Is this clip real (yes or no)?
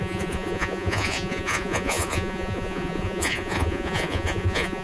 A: no